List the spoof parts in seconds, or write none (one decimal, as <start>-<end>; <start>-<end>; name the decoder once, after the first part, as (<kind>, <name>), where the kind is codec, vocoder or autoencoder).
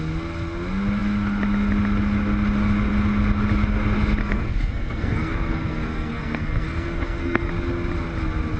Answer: 4.2-7.5 (codec, SNAC)